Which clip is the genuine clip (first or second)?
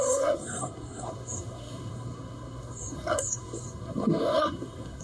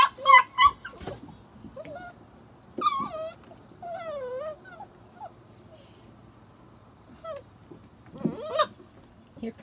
second